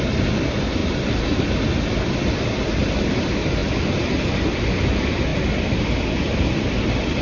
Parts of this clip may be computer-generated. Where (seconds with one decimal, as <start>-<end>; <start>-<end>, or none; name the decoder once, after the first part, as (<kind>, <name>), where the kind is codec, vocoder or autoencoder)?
0.8-2.6 (vocoder, BigVGAN v2); 3.6-4.6; 5.3-6.8